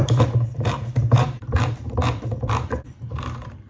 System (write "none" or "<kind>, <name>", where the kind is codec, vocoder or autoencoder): vocoder, BigVGAN v2